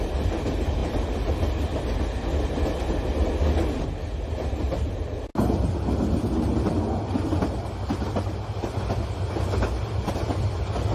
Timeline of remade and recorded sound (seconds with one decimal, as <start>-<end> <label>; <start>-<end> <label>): 0.0-10.9 recorded